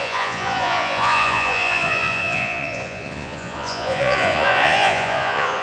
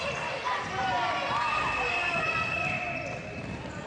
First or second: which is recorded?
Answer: second